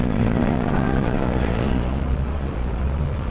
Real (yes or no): no